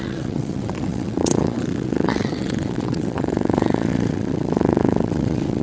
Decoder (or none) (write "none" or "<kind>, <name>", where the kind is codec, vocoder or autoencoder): vocoder, WaveNeXt